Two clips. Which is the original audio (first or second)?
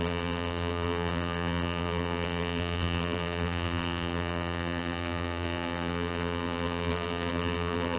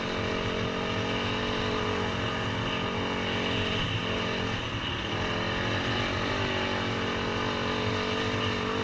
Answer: second